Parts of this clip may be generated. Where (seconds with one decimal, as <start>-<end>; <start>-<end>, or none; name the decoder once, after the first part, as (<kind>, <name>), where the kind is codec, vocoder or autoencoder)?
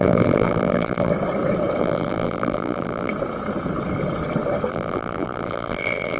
0.0-1.1 (vocoder, BigVGAN v2); 1.8-3.1; 4.7-6.2